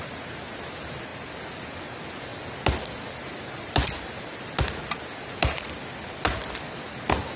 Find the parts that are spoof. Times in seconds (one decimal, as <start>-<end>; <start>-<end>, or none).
none